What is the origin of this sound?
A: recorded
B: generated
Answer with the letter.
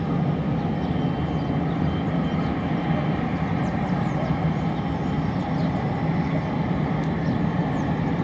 A